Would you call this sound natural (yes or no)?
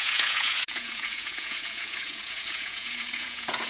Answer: no